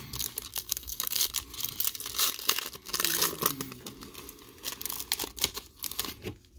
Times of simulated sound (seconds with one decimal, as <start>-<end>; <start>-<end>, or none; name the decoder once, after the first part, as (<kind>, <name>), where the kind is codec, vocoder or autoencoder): 0.5-1.3 (codec, SNAC)